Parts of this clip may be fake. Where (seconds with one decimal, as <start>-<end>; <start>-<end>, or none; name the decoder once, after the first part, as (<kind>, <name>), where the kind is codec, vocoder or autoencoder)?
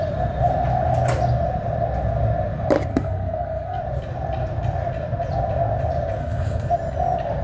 2.9-3.8 (codec, SNAC); 6.2-6.7